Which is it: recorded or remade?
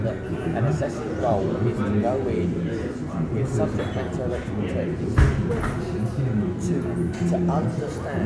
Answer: recorded